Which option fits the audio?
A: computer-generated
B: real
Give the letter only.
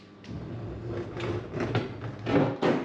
B